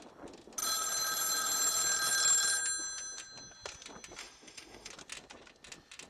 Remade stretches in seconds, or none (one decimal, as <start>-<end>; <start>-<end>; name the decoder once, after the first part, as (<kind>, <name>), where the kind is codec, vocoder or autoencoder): 4.2-4.9 (autoencoder, DAC-VAE)